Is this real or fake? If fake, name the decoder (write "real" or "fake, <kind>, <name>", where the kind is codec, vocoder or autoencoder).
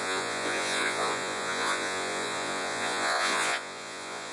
fake, vocoder, Vocos